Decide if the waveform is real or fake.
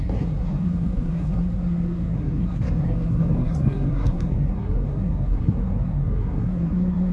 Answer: fake